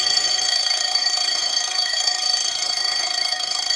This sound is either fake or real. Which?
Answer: fake